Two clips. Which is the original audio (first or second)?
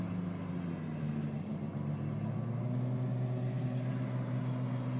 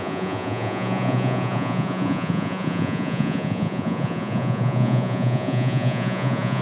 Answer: first